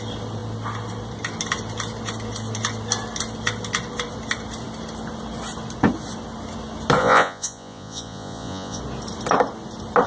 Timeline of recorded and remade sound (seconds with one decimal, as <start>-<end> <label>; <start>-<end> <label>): 0.0-7.0 recorded; 7.0-8.8 remade; 8.8-10.1 recorded